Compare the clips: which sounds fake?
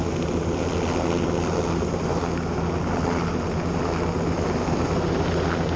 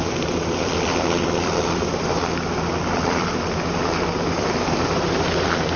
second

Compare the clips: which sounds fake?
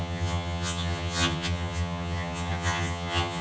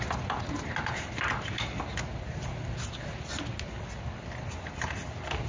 first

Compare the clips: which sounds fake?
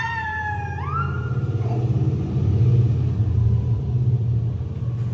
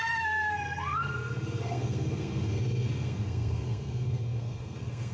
second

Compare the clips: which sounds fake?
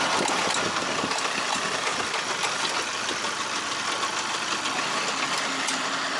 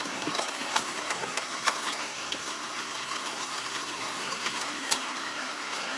second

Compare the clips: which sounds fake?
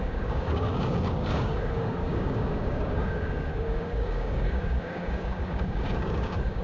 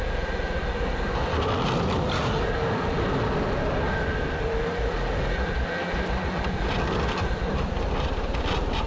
first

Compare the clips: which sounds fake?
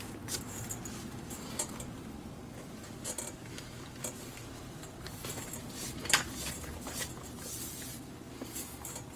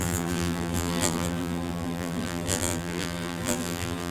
second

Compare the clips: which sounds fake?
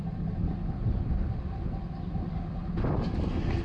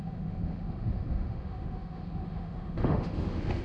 second